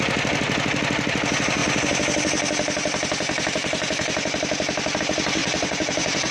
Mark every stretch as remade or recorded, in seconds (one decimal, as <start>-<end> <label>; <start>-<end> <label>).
0.0-5.4 recorded; 5.4-6.3 remade